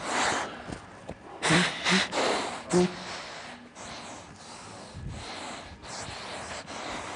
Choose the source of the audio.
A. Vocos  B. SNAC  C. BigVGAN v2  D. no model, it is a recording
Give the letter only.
D